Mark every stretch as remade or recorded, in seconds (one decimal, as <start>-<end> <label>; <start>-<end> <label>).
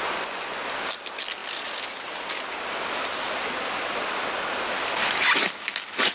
0.0-0.6 remade; 0.6-6.1 recorded